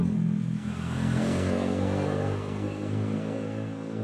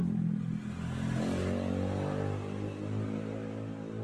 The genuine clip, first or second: second